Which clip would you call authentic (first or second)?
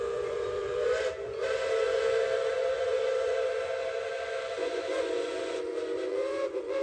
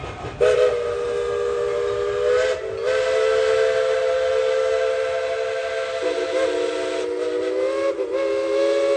second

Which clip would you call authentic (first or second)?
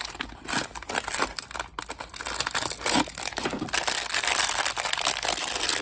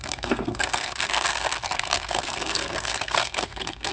first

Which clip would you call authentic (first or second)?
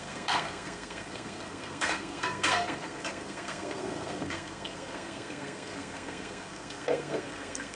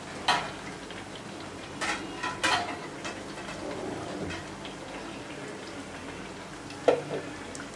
second